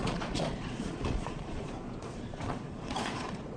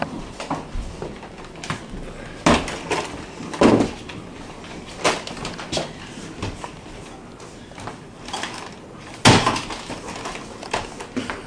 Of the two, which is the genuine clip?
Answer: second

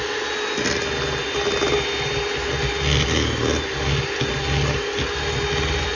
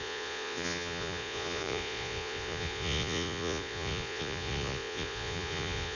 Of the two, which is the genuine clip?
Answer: first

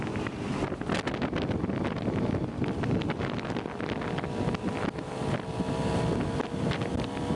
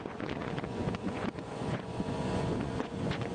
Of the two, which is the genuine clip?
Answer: first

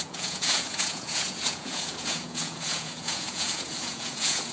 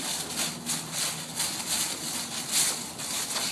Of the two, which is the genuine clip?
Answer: second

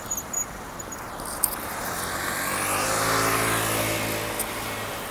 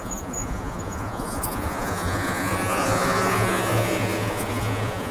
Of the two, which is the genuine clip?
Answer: first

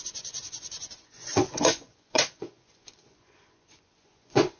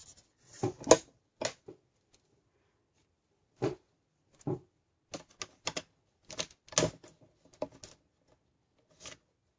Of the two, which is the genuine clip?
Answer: second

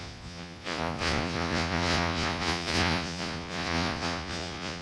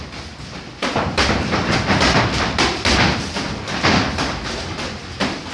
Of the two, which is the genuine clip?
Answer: second